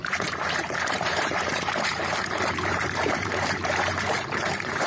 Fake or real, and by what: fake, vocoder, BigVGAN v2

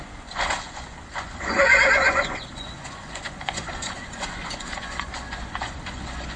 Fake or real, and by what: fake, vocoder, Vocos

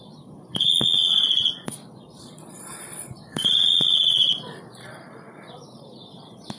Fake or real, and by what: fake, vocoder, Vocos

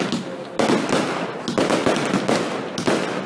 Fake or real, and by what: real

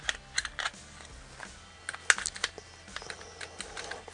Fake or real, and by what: real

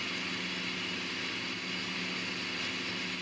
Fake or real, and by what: real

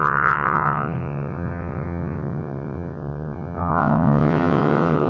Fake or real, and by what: fake, vocoder, WaveNeXt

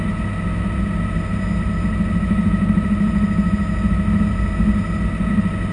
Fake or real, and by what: real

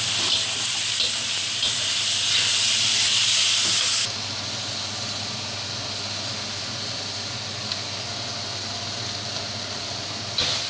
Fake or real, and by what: real